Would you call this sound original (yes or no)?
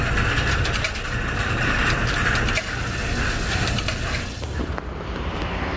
yes